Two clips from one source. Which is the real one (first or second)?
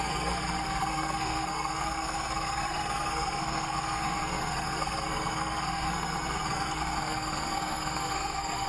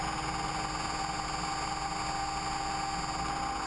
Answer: second